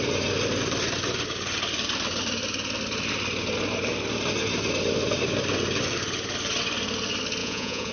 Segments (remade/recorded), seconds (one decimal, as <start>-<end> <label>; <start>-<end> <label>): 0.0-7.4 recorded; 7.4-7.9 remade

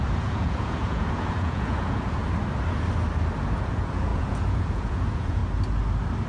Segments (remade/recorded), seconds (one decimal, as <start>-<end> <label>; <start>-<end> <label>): 0.0-2.2 remade; 2.2-3.5 recorded; 3.5-5.4 remade; 5.4-6.3 recorded

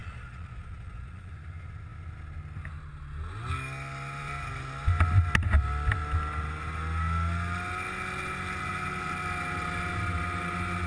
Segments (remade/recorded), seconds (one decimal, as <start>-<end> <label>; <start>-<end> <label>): 0.0-1.3 remade; 1.3-10.9 recorded

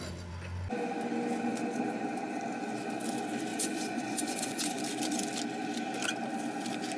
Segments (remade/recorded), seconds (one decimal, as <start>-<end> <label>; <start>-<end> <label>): 0.0-3.5 recorded; 3.5-4.8 remade; 4.8-7.0 recorded

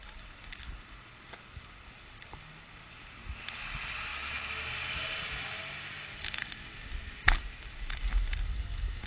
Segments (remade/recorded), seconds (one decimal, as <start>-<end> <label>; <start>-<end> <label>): 0.0-9.1 recorded

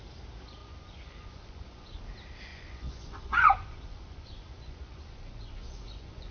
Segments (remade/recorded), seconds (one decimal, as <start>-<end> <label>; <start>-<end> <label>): 0.0-0.6 recorded; 0.6-2.0 remade; 2.0-2.5 recorded; 2.5-6.3 remade

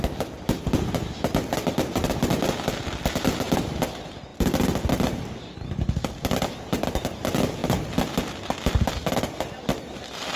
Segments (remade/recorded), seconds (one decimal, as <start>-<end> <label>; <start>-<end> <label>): 0.0-10.4 recorded